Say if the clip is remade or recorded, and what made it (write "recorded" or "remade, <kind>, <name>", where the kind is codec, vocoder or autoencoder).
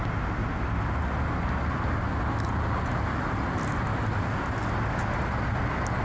recorded